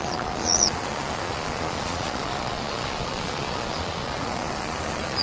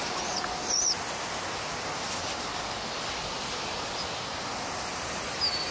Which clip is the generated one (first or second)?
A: first